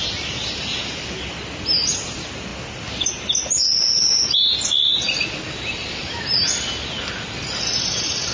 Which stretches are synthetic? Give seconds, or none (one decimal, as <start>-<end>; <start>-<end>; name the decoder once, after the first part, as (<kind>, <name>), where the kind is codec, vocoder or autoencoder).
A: none